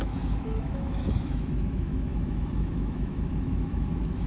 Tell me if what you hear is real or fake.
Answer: fake